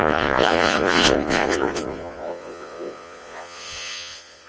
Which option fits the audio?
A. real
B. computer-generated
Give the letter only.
B